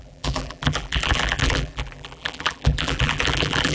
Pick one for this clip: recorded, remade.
remade